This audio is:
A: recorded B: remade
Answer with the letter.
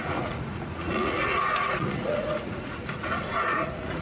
B